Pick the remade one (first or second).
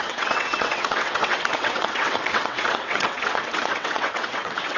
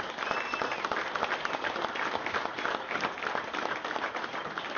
first